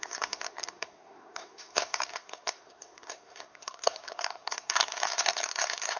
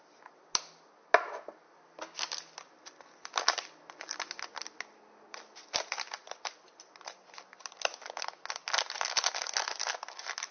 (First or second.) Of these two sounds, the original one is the second